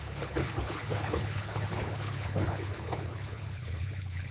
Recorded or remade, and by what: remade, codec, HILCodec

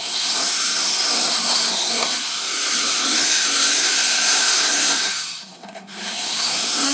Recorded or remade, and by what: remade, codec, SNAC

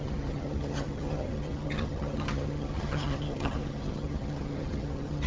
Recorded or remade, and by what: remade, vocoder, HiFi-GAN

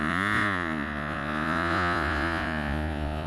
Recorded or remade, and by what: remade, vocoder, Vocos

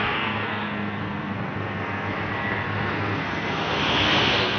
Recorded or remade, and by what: remade, codec, SNAC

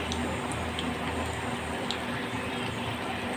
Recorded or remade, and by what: recorded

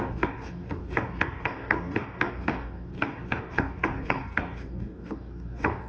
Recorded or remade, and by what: remade, codec, DAC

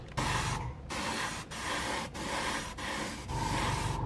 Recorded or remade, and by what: recorded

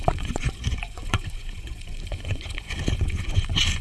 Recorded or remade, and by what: remade, vocoder, Vocos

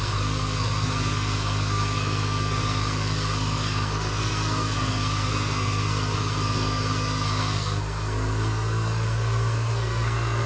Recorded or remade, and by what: remade, codec, SNAC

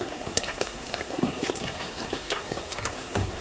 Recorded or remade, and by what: remade, codec, SNAC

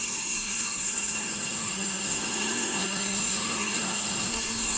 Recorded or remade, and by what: remade, codec, SNAC